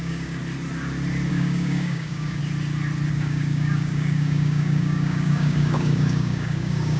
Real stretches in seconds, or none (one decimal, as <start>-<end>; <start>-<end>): 0.4-1.3; 2.4-3.1